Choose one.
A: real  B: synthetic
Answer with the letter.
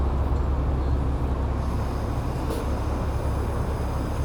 A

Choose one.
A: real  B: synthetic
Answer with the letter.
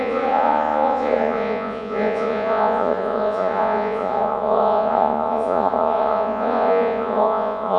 B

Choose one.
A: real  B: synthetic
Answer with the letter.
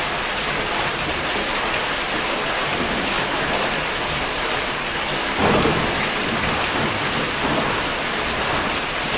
A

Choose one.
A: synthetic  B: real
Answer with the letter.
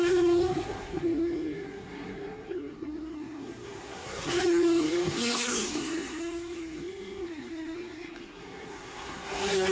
A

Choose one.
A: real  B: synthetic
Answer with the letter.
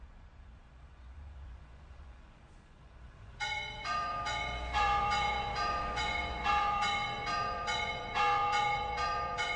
B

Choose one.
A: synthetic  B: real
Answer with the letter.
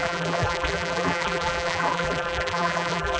A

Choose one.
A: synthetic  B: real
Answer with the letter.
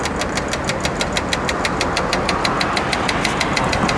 B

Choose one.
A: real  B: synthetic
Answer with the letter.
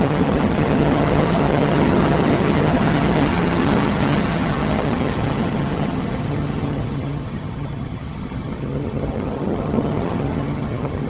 B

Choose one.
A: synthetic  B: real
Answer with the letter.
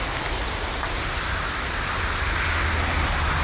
B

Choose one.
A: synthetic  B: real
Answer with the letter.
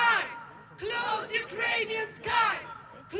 B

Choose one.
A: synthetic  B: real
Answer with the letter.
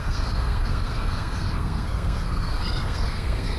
A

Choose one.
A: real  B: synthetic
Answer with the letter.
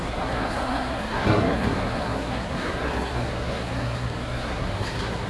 B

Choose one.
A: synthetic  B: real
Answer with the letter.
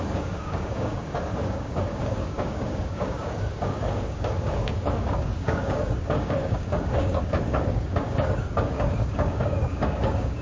A